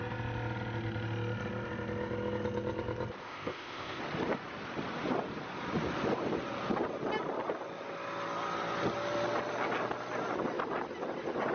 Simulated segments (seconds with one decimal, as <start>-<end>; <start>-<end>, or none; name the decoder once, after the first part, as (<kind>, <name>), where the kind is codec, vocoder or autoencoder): 3.2-4.0 (codec, ZipCodec)